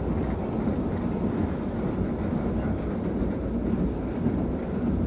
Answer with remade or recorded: recorded